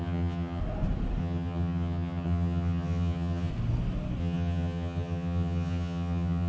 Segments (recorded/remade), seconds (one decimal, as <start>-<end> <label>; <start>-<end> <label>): 0.0-0.6 remade; 0.6-1.2 recorded; 1.2-3.5 remade; 3.5-4.2 recorded; 4.2-6.5 remade